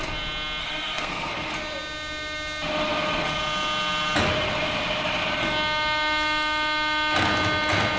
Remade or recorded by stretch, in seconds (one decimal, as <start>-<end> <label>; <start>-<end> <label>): 0.0-0.6 recorded; 0.6-1.3 remade; 1.3-8.0 recorded